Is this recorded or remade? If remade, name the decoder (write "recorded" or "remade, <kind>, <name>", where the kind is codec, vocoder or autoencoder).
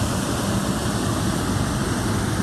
recorded